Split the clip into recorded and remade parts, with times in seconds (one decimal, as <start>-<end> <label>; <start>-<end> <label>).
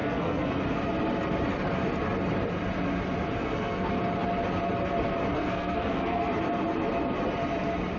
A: 0.0-0.6 remade; 0.6-3.4 recorded; 3.4-4.0 remade; 4.0-5.3 recorded; 5.3-6.3 remade; 6.3-8.0 recorded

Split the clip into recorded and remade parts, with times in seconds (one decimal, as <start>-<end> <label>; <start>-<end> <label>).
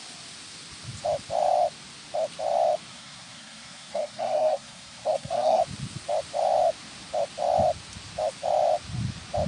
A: 0.0-2.9 recorded; 2.9-5.6 remade; 5.6-9.5 recorded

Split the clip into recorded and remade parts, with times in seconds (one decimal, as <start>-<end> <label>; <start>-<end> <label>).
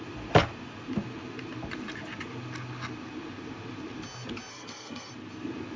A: 0.0-4.5 recorded; 4.5-5.1 remade; 5.1-5.8 recorded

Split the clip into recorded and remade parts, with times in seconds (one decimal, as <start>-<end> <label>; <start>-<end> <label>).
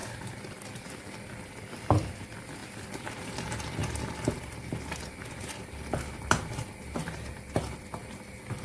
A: 0.0-8.6 recorded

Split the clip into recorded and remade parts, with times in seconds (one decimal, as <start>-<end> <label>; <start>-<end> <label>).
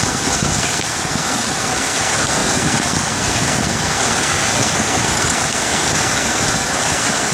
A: 0.0-7.3 remade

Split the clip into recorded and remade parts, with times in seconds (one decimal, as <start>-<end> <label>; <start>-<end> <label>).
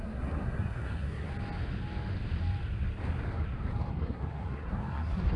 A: 0.0-1.3 remade; 1.3-3.9 recorded; 3.9-5.4 remade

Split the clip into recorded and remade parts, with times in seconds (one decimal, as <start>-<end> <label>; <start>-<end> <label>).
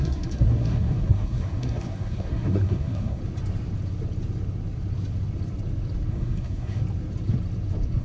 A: 0.0-3.2 remade; 3.2-6.1 recorded; 6.1-6.8 remade; 6.8-8.0 recorded